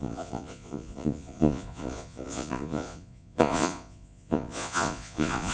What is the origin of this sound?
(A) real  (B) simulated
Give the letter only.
B